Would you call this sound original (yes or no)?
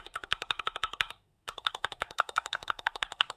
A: no